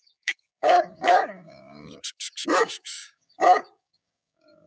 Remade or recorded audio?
remade